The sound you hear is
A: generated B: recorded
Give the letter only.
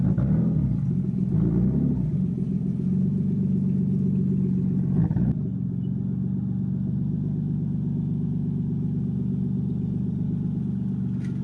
B